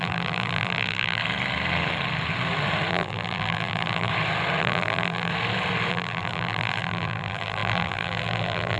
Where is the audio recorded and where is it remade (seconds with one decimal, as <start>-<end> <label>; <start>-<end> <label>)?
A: 0.0-1.2 remade; 1.2-2.9 recorded; 2.9-4.1 remade; 4.1-4.6 recorded; 4.6-5.3 remade; 5.3-5.9 recorded; 5.9-8.8 remade